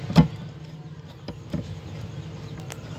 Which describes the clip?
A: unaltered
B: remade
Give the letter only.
A